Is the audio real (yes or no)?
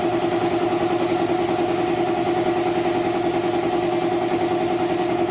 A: yes